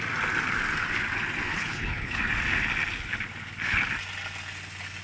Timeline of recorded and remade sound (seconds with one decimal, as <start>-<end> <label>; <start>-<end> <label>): 0.0-1.5 recorded; 1.5-2.2 remade; 2.2-5.0 recorded